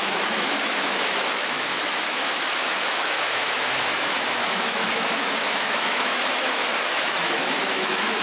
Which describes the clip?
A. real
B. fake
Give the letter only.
B